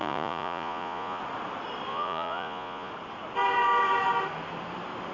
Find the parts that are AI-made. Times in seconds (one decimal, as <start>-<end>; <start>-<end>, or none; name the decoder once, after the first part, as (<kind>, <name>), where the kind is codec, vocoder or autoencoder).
0.0-1.2 (vocoder, Vocos); 1.9-2.9